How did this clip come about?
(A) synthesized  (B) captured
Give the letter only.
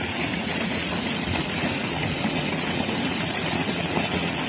A